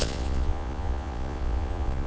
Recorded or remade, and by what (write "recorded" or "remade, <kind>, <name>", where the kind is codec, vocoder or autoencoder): remade, vocoder, Vocos